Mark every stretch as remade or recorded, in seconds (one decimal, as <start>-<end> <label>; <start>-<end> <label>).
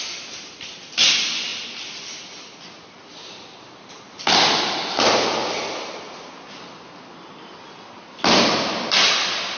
0.0-9.6 recorded